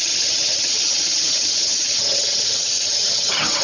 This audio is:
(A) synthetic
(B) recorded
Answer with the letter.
A